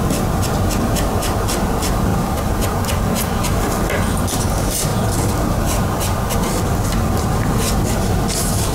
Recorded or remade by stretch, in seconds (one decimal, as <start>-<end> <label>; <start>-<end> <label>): 0.0-8.7 recorded